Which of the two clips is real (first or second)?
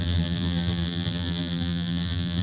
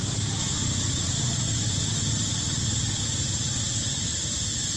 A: second